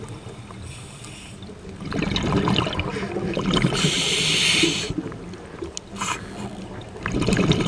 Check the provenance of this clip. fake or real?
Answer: real